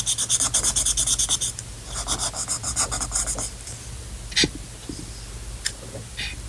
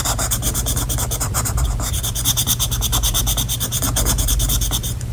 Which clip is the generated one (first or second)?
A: second